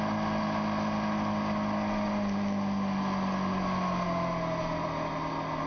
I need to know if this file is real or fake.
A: real